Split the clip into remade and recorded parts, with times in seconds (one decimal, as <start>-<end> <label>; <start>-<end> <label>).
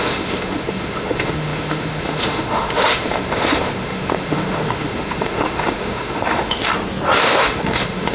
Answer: 0.0-6.7 remade; 6.7-7.2 recorded; 7.2-8.1 remade